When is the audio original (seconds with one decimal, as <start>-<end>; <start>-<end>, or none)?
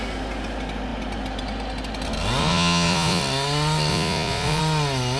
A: 0.0-2.4; 3.2-3.9; 4.6-5.2